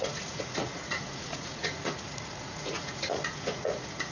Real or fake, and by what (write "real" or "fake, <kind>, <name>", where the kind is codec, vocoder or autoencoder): fake, vocoder, Vocos